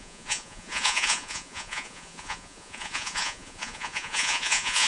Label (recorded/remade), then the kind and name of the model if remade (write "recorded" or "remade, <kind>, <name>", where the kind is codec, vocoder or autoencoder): remade, vocoder, Vocos